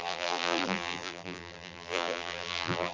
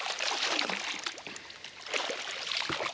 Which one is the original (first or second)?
second